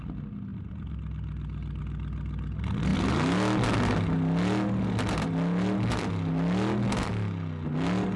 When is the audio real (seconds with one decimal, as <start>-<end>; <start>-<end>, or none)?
0.0-0.5; 1.8-8.2